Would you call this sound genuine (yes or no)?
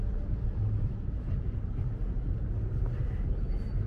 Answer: yes